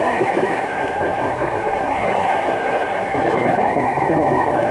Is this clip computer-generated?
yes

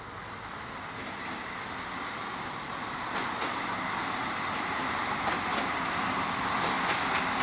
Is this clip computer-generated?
no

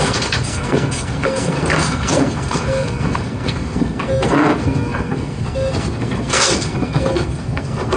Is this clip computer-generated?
yes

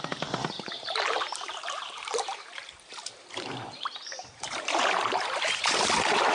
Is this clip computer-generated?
yes